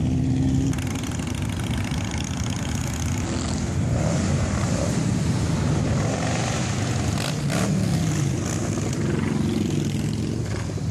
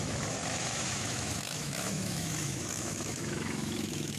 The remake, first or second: second